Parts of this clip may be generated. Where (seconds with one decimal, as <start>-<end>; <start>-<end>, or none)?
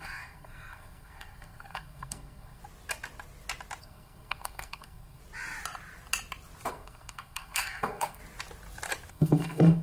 0.0-2.6; 3.8-5.2; 6.7-8.2; 9.1-9.8